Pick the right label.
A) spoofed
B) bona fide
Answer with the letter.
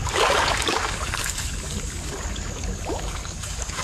A